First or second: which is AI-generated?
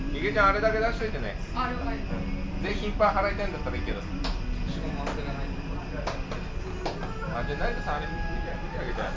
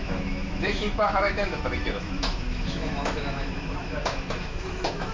second